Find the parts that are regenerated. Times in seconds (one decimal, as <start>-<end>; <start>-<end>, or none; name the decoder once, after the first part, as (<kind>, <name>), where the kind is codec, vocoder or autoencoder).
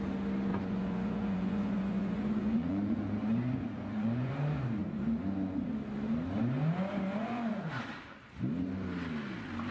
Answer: 0.5-4.3 (vocoder, Vocos); 7.2-7.7